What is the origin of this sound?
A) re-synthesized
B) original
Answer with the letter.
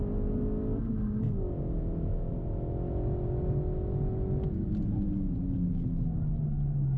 B